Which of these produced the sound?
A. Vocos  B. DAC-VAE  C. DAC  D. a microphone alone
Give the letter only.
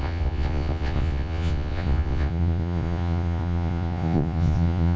A